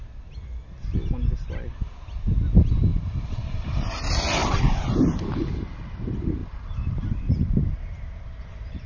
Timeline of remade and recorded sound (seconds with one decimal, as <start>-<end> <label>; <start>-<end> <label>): 0.0-2.9 recorded; 2.9-3.9 remade; 3.9-4.4 recorded; 4.4-5.0 remade; 5.0-6.4 recorded; 6.4-8.9 remade